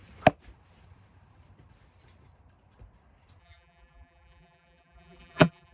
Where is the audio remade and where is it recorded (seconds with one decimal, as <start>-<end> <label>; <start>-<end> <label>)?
0.0-3.4 recorded; 3.4-5.7 remade